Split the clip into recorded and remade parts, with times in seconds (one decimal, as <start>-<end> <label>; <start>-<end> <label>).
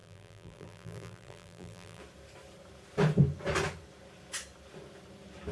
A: 0.0-2.0 remade; 2.0-5.5 recorded